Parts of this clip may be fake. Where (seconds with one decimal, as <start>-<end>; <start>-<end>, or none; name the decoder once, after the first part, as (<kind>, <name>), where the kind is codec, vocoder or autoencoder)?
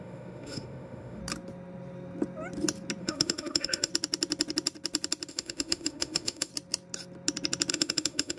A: 0.0-1.2 (autoencoder, DAC-VAE); 3.0-3.9; 5.3-6.5; 7.7-8.4